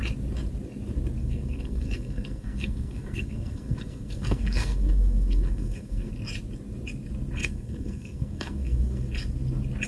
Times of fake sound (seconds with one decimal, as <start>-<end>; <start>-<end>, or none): 1.2-6.1; 7.4-9.0